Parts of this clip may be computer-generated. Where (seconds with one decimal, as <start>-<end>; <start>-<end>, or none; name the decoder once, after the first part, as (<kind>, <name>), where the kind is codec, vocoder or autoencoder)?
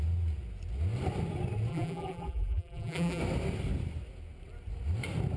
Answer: 1.7-3.2 (vocoder, BigVGAN v2)